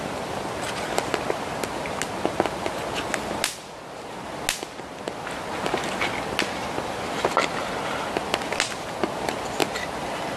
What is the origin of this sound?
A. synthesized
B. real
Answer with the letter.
B